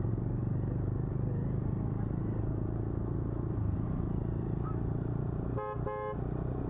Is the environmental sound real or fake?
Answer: real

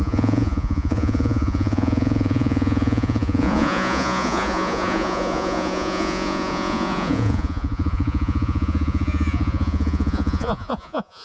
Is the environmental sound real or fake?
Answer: fake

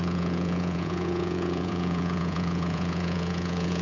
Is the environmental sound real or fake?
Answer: fake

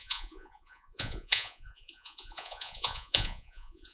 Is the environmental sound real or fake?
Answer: fake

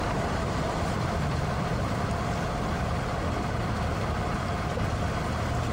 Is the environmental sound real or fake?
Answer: real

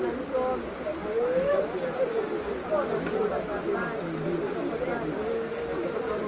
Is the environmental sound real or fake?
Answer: real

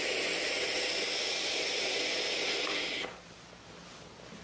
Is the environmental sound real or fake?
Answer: real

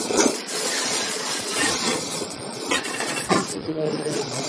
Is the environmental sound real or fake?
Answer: fake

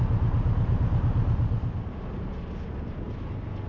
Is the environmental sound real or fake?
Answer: real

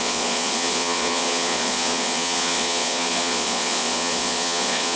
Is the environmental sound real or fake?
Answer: fake